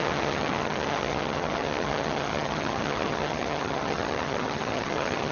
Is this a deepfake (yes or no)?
yes